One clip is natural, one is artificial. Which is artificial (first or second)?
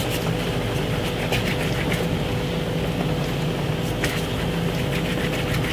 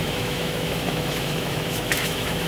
second